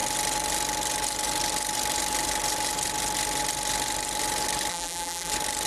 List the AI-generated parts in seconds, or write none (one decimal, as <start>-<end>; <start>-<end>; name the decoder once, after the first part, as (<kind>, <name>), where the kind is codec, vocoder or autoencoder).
4.7-5.3 (vocoder, BigVGAN v2)